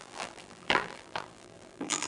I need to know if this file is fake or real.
fake